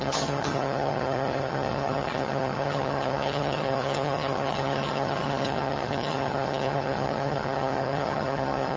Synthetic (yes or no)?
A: yes